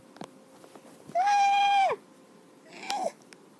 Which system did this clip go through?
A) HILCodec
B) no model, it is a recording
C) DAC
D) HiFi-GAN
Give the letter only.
B